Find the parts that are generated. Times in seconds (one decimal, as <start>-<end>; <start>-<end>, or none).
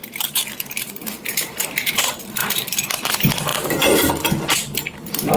0.0-2.0; 2.4-3.1; 3.5-4.1